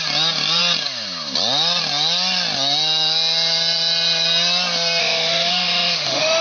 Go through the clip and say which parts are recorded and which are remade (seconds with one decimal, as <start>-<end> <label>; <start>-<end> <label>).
0.0-5.0 recorded; 5.0-6.4 remade